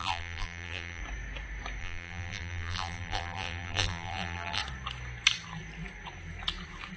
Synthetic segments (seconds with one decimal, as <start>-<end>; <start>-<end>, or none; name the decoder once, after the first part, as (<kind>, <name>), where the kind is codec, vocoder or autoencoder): 0.0-1.0 (vocoder, BigVGAN v2); 1.8-4.6